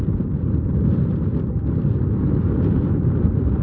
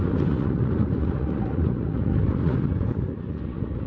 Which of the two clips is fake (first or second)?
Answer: second